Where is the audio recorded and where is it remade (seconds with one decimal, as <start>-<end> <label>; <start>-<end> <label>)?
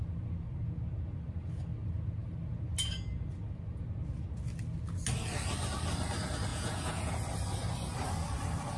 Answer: 0.0-6.5 recorded; 6.5-7.1 remade; 7.1-8.8 recorded